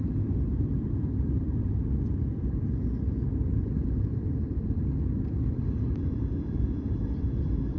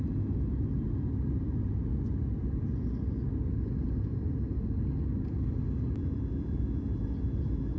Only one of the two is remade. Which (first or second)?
first